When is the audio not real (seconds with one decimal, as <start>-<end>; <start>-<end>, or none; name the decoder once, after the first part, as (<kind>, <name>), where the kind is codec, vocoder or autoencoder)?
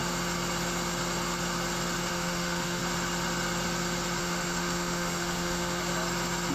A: 2.1-2.8 (autoencoder, DAC-VAE); 4.2-5.8